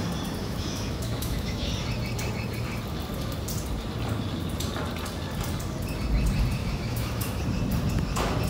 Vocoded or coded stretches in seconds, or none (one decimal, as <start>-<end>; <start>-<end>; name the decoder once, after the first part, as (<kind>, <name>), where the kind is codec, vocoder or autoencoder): 0.4-1.7 (autoencoder, DAC-VAE); 6.6-7.4